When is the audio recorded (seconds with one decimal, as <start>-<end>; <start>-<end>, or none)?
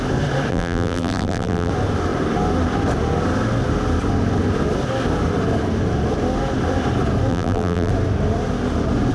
0.0-0.5; 1.7-7.3; 7.9-9.1